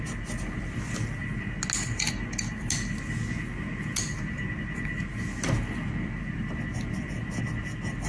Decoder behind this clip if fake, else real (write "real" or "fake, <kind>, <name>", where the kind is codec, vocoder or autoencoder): real